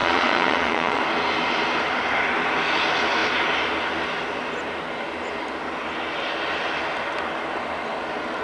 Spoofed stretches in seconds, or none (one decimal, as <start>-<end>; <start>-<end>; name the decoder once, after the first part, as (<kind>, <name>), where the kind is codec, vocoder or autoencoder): 0.0-1.0 (vocoder, Vocos)